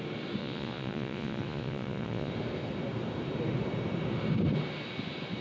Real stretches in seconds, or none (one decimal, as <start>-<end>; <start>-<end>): 0.0-0.4; 2.3-5.4